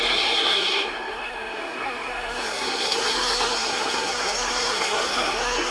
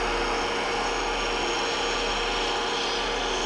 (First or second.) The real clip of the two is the second